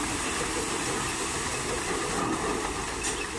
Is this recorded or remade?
recorded